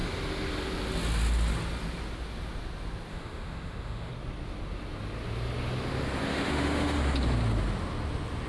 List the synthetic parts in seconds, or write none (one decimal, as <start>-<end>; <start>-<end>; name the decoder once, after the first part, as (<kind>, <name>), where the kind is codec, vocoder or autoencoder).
3.1-4.1 (autoencoder, DAC-VAE); 6.3-7.0